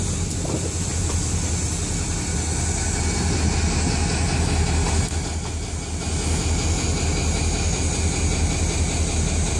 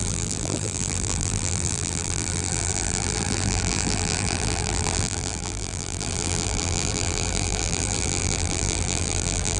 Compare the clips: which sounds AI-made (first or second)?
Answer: second